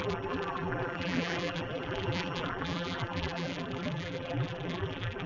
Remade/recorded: remade